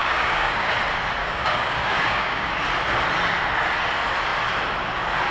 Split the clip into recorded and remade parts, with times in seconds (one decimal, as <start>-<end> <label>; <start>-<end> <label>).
0.0-0.7 remade; 0.7-1.2 recorded; 1.2-2.5 remade; 2.5-5.3 recorded